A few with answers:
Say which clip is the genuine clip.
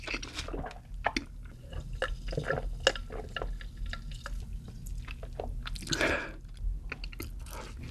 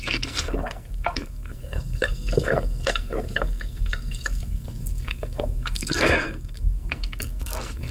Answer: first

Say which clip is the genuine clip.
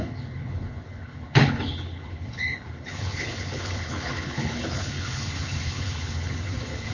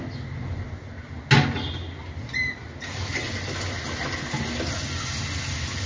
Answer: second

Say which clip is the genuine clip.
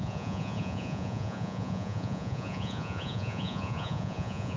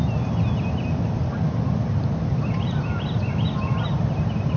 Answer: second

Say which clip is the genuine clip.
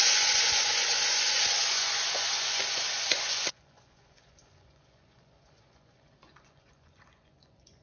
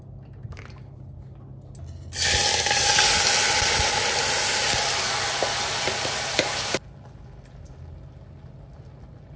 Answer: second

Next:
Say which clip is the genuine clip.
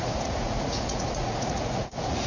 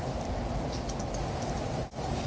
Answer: second